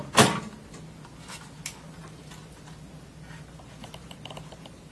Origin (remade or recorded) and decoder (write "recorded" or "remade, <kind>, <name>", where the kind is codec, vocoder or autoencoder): recorded